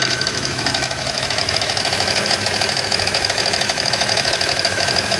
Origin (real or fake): fake